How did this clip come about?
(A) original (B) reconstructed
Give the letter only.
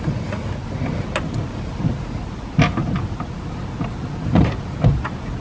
A